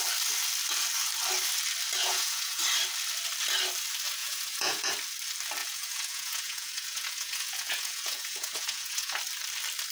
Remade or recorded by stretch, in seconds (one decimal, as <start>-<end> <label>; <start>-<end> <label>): 0.0-2.0 recorded; 2.0-2.6 remade; 2.6-4.2 recorded; 4.2-4.9 remade; 4.9-5.6 recorded; 5.6-9.2 remade; 9.2-9.9 recorded